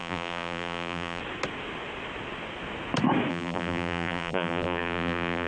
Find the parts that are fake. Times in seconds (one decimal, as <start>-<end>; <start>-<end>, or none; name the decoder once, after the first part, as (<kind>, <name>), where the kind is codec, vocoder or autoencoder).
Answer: 0.0-1.2 (vocoder, BigVGAN v2); 3.3-5.5